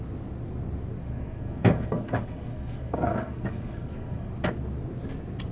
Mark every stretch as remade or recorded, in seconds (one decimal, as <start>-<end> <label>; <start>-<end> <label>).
0.0-1.0 recorded; 1.0-4.3 remade; 4.3-5.5 recorded